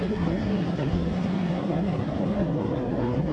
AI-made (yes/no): yes